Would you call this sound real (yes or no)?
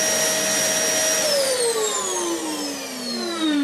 yes